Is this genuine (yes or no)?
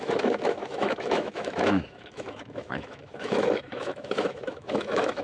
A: no